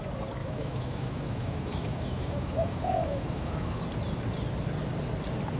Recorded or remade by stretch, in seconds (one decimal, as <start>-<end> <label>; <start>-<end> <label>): 0.0-0.4 recorded; 0.4-3.8 remade; 3.8-5.6 recorded

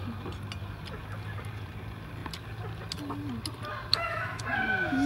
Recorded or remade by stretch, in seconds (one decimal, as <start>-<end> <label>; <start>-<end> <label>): 0.0-3.9 recorded; 3.9-4.4 remade; 4.4-5.1 recorded

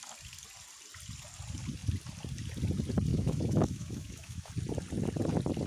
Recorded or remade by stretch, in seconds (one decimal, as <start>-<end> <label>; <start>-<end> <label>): 0.0-3.1 recorded; 3.1-4.5 remade; 4.5-5.7 recorded

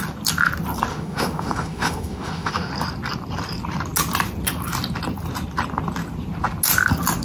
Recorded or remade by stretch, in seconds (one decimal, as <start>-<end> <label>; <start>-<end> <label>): 0.0-0.9 recorded; 0.9-2.7 remade; 2.7-7.2 recorded